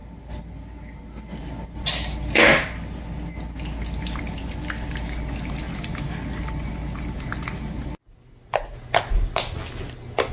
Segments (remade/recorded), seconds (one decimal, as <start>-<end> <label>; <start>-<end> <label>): 0.0-10.3 recorded

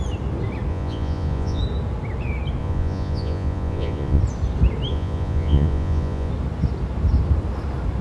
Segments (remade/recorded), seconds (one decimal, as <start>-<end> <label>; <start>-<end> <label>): 0.0-0.7 recorded; 0.7-1.6 remade; 1.6-2.6 recorded; 2.6-4.2 remade; 4.2-4.9 recorded; 4.9-6.3 remade; 6.3-8.0 recorded

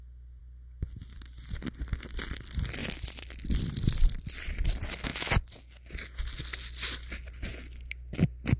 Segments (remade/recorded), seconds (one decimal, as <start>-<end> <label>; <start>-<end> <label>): 0.0-0.4 recorded; 0.4-1.2 remade; 1.2-2.8 recorded; 2.8-3.6 remade; 3.6-4.0 recorded; 4.0-4.5 remade; 4.5-8.6 recorded

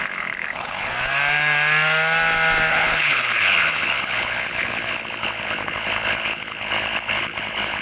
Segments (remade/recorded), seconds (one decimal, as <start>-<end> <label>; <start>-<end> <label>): 0.0-0.9 remade; 0.9-2.7 recorded; 2.7-7.8 remade

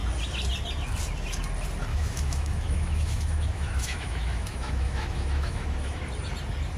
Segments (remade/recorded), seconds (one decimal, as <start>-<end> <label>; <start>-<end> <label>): 0.0-1.9 recorded; 1.9-6.0 remade; 6.0-6.8 recorded